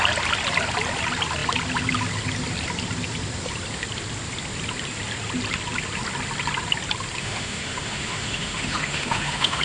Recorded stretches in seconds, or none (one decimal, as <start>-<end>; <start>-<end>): 0.0-7.2